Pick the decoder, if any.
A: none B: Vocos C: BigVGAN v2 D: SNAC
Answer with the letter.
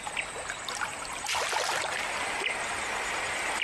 A